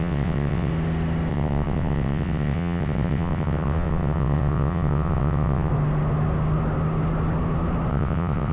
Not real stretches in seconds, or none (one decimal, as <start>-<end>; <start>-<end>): 0.0-0.7; 1.3-5.7; 7.9-8.5